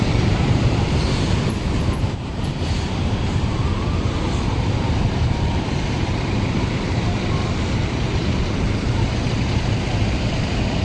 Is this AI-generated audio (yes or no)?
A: yes